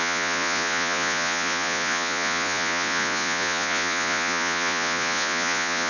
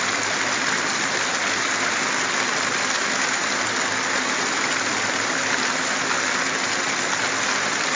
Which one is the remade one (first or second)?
first